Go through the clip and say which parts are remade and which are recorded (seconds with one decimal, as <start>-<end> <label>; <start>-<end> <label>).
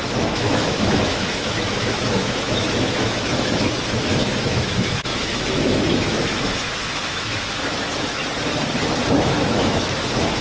0.0-8.2 remade; 8.2-9.1 recorded; 9.1-10.4 remade